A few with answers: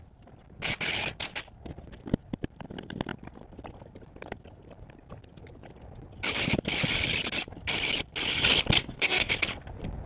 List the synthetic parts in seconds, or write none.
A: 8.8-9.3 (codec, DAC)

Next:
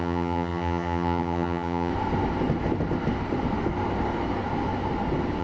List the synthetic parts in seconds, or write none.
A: 0.0-1.9 (vocoder, HiFi-GAN)

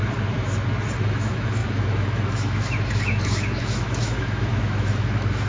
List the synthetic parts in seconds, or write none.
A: 1.1-5.5 (autoencoder, DAC-VAE)

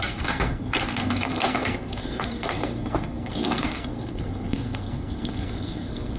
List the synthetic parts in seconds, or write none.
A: 0.0-6.2 (codec, SNAC)